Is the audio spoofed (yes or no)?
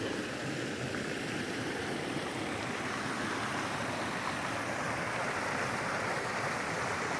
no